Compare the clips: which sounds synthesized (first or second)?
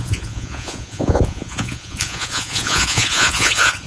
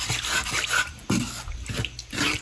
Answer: first